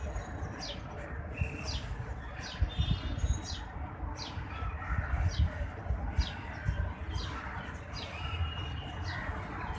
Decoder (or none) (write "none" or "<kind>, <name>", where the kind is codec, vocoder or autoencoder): none